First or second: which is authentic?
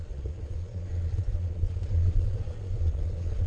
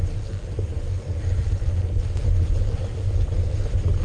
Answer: second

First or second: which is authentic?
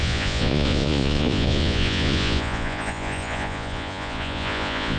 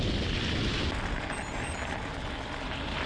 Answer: second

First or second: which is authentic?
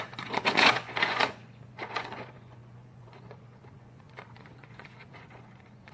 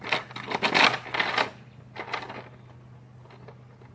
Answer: second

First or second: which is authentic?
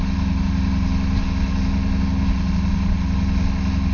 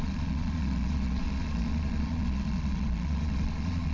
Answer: first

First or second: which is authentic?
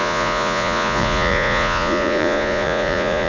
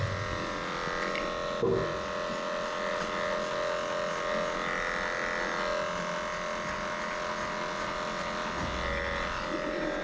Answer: second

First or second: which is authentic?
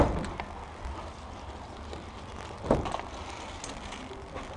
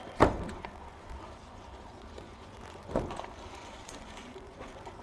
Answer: first